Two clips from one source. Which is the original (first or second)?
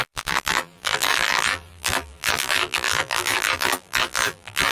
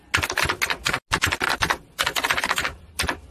second